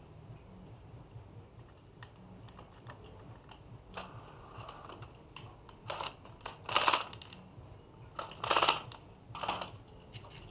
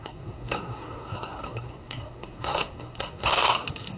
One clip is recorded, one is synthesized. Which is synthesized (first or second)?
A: second